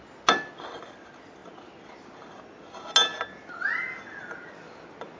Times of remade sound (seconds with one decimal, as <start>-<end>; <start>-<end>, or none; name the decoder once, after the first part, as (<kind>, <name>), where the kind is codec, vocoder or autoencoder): none